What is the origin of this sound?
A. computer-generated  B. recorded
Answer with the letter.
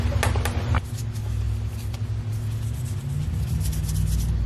B